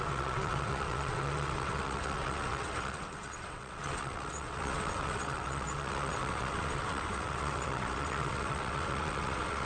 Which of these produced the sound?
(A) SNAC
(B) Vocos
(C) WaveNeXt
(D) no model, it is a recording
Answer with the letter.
C